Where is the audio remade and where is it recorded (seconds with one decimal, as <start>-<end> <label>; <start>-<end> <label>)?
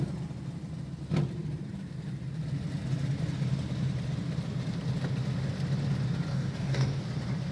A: 0.0-6.3 recorded; 6.3-7.0 remade; 7.0-7.5 recorded